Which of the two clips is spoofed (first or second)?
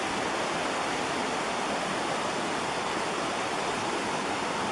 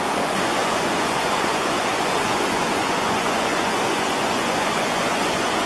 second